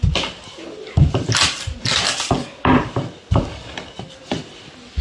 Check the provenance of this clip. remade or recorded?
recorded